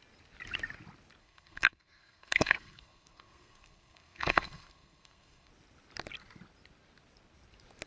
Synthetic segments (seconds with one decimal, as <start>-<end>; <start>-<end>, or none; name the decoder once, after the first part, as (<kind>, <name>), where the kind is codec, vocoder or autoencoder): 1.2-5.5 (codec, SNAC)